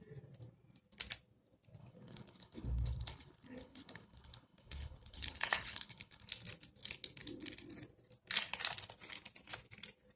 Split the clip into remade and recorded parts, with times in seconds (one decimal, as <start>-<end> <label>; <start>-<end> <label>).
0.0-1.8 recorded; 1.8-6.3 remade; 6.3-10.2 recorded